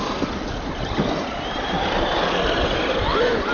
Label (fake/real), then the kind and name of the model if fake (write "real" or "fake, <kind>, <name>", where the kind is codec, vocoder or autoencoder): real